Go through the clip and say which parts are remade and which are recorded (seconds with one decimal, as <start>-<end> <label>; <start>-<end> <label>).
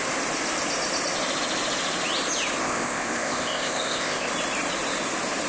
0.0-2.6 recorded; 2.6-4.3 remade; 4.3-5.5 recorded